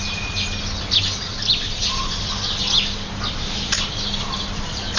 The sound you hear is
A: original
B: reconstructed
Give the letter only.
A